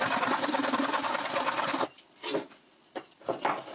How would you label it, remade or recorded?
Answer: remade